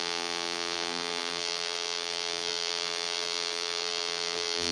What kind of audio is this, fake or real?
fake